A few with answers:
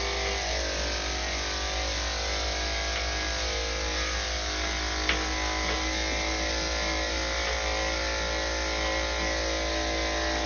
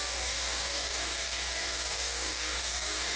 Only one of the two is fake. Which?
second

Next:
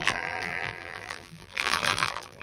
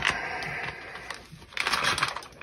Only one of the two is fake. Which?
first